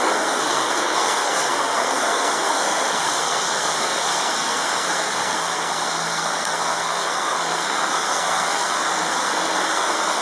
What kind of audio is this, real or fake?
fake